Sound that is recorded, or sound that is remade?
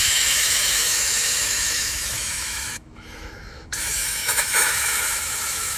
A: remade